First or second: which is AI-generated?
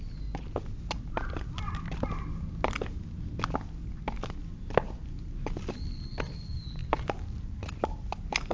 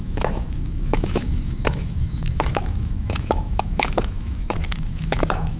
second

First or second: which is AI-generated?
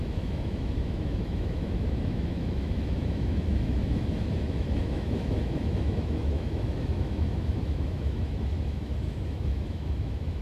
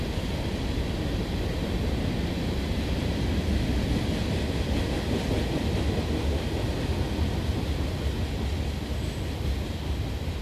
first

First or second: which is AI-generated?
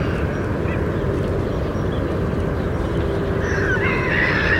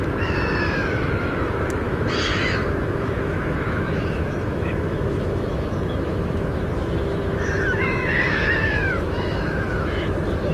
second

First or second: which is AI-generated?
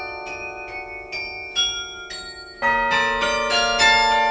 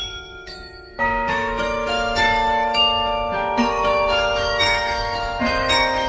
second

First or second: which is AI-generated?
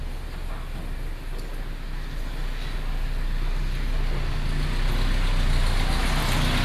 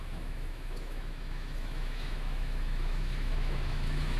second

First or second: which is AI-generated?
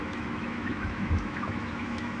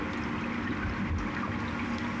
first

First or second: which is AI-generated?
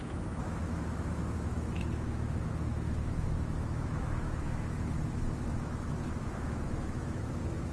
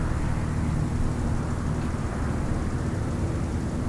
first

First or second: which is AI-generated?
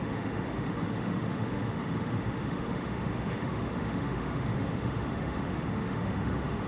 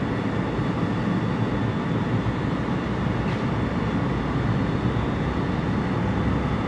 first